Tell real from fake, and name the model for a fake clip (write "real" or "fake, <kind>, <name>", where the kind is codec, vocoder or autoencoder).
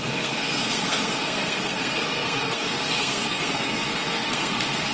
fake, codec, SNAC